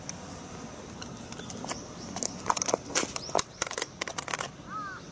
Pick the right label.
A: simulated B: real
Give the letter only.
B